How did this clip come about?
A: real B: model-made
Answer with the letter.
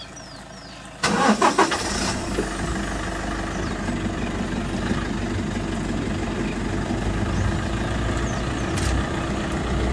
A